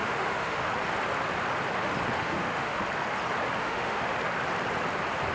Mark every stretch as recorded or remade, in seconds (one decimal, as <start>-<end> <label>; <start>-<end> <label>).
0.0-0.7 remade; 0.7-2.2 recorded; 2.2-2.8 remade; 2.8-3.6 recorded; 3.6-4.1 remade; 4.1-5.3 recorded